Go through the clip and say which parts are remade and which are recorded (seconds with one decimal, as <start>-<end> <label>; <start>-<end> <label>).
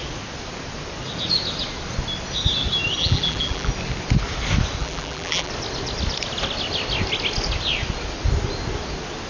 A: 0.0-3.0 recorded; 3.0-3.7 remade; 3.7-4.8 recorded; 4.8-5.5 remade; 5.5-9.3 recorded